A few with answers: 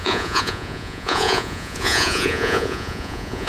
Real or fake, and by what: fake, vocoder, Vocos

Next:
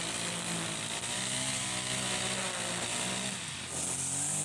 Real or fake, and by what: real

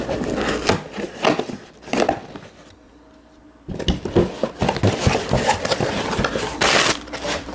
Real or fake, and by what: real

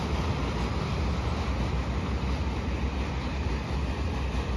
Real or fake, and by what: real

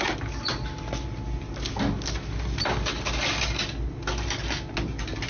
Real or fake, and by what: real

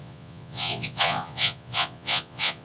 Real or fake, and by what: fake, vocoder, Vocos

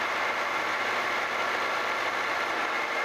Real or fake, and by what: real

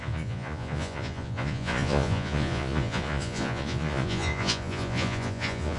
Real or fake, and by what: fake, vocoder, Vocos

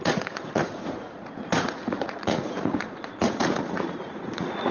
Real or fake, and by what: fake, vocoder, Vocos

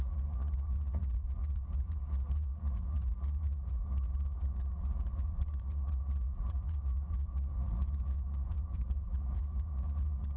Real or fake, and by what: fake, vocoder, Vocos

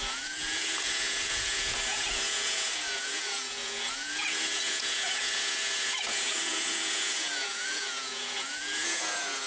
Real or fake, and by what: fake, vocoder, Vocos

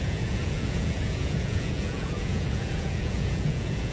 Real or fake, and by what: fake, vocoder, Vocos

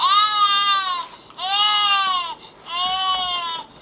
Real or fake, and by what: real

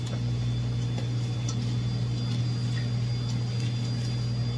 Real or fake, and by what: real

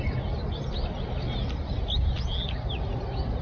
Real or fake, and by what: real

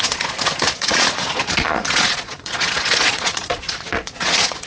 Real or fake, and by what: fake, vocoder, Vocos